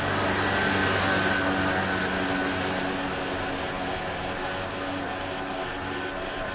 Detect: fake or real real